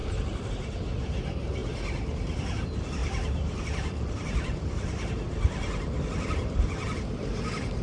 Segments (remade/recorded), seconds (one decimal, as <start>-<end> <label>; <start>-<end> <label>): 0.0-0.5 remade; 0.5-3.0 recorded; 3.0-5.1 remade; 5.1-7.8 recorded